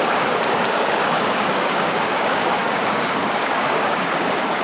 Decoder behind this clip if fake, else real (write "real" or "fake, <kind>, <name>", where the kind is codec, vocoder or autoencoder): fake, codec, DAC